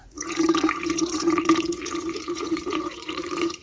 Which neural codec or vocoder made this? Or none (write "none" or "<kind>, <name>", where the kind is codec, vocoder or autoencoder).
vocoder, Vocos